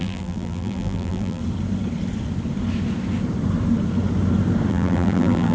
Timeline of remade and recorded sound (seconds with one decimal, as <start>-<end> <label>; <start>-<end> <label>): 0.0-1.4 remade; 1.4-4.7 recorded; 4.7-5.5 remade